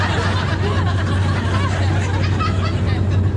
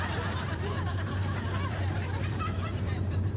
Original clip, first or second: first